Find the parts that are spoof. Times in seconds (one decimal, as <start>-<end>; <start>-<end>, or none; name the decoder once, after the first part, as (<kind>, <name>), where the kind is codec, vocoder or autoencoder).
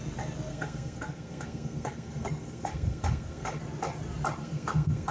0.5-3.6 (codec, SNAC); 4.4-5.1